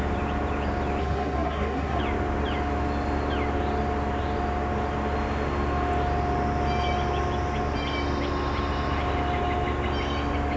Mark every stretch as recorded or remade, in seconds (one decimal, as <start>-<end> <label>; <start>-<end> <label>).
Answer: 0.0-1.0 recorded; 1.0-2.0 remade; 2.0-10.6 recorded